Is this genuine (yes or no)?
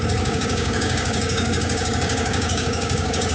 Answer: no